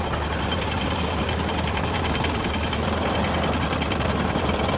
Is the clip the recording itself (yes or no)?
no